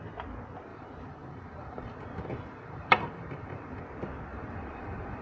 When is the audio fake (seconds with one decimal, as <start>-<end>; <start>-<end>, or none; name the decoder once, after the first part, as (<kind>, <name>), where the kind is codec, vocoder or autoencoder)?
0.7-3.8 (vocoder, BigVGAN v2); 4.3-5.2